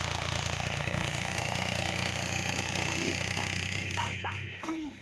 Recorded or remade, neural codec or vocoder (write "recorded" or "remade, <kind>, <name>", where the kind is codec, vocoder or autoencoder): remade, autoencoder, DAC-VAE